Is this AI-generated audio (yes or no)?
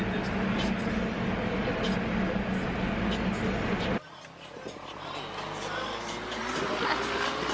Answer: no